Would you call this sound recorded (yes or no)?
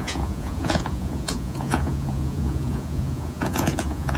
no